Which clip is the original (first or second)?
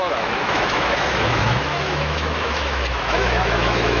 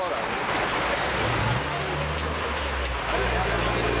second